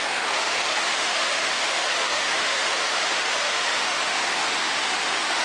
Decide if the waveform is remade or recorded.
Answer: remade